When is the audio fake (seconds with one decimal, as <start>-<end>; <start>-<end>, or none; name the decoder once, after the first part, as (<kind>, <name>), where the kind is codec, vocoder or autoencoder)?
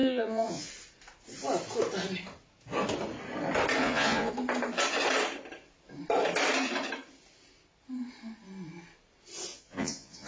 0.0-0.7 (vocoder, Vocos); 3.8-4.3; 9.5-10.3